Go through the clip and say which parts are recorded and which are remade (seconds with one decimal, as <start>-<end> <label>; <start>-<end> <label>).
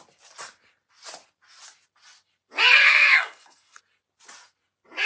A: 0.0-2.8 recorded; 2.8-3.8 remade; 3.8-5.1 recorded